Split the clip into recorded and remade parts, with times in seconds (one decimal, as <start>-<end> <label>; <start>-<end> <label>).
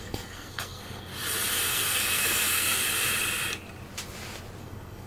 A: 0.0-1.1 remade; 1.1-1.7 recorded; 1.7-2.8 remade; 2.8-4.6 recorded; 4.6-5.1 remade